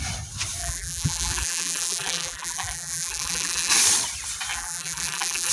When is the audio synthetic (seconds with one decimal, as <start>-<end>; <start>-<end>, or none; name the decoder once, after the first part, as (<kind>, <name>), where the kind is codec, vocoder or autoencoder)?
0.6-3.7 (vocoder, BigVGAN v2); 4.5-5.5